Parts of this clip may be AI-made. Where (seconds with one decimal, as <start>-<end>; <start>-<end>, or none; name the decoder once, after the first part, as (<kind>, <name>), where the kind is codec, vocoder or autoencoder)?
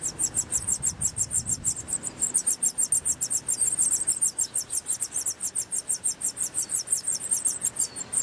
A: none